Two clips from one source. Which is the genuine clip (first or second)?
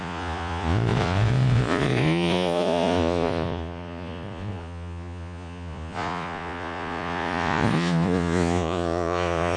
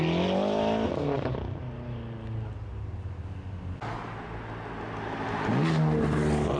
second